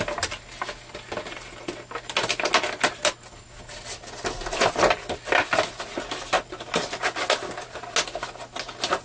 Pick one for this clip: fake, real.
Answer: real